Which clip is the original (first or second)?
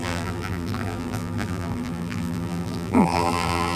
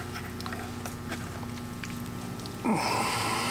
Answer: second